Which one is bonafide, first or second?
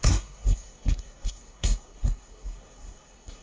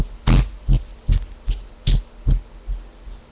second